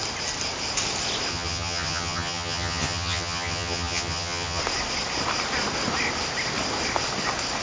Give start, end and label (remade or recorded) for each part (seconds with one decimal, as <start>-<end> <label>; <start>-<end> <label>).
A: 0.0-1.3 recorded; 1.3-4.6 remade; 4.6-7.6 recorded